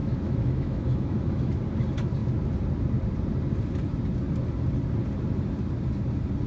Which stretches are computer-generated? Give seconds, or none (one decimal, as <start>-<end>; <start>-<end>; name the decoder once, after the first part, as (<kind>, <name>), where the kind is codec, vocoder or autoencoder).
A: 0.0-1.6 (autoencoder, DAC-VAE)